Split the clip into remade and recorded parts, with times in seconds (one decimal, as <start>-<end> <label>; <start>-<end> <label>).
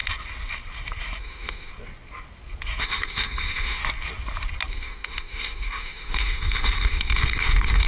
0.0-1.2 recorded; 1.2-1.7 remade; 1.7-2.8 recorded; 2.8-3.8 remade; 3.8-4.7 recorded; 4.7-7.9 remade